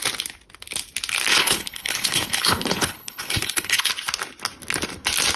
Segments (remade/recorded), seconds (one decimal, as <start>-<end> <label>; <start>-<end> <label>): 0.0-1.3 recorded; 1.3-3.9 remade; 3.9-5.4 recorded